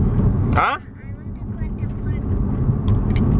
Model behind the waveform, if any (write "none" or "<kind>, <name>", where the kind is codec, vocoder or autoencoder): none